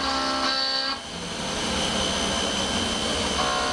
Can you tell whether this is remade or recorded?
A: recorded